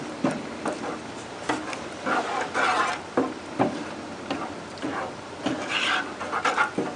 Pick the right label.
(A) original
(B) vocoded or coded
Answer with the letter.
A